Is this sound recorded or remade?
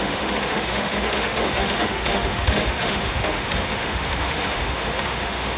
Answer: remade